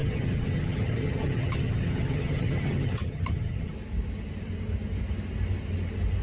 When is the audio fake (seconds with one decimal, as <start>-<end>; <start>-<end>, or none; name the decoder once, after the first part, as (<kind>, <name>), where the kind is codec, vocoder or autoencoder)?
0.0-3.7 (vocoder, HiFi-GAN)